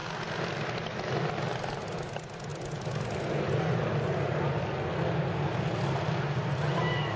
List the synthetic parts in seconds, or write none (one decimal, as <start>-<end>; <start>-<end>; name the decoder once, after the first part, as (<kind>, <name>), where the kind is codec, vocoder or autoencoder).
none